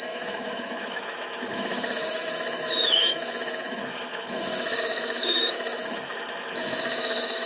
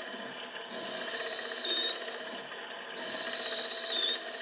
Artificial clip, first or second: first